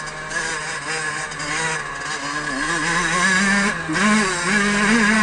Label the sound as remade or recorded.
recorded